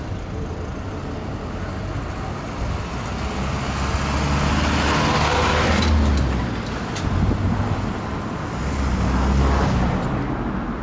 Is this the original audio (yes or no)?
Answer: yes